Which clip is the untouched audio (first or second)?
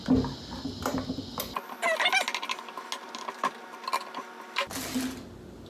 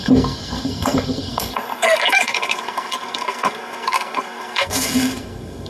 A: first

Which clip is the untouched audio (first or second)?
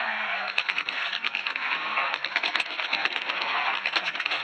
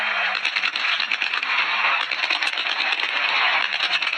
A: second